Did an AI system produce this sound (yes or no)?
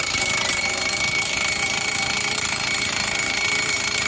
yes